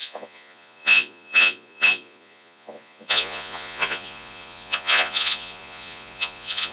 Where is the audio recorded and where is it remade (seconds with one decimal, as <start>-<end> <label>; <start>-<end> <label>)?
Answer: 0.0-6.7 remade